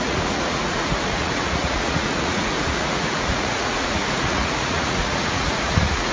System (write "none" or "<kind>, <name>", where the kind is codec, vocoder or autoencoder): vocoder, Vocos